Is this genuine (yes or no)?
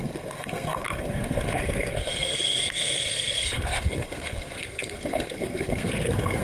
no